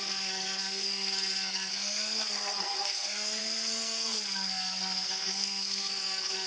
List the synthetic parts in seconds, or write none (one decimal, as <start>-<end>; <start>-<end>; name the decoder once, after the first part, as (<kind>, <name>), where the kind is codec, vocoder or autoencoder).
0.0-6.5 (codec, SNAC)